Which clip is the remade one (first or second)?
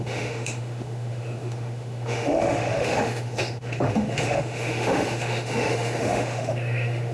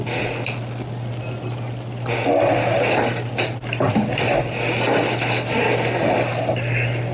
first